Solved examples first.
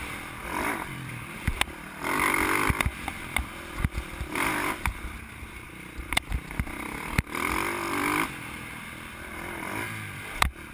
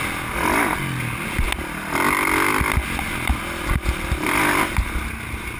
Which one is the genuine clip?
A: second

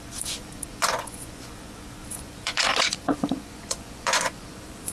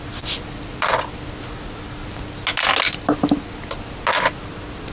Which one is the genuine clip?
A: second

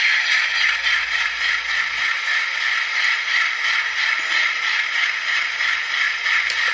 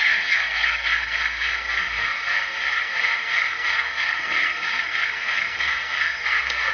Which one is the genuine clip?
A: first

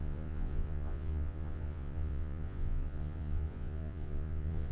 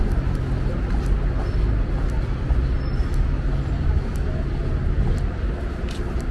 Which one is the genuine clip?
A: second